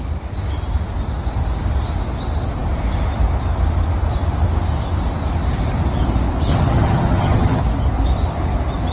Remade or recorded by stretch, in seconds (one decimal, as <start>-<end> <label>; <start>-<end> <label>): 0.0-6.5 recorded; 6.5-7.6 remade; 7.6-8.9 recorded